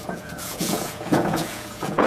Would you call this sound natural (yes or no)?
no